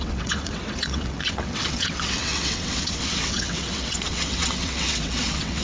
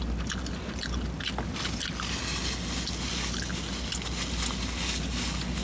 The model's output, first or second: first